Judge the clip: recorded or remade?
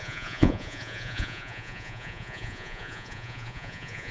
remade